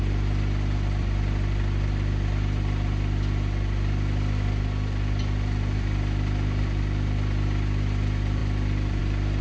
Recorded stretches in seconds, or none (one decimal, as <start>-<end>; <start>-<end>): 0.0-9.4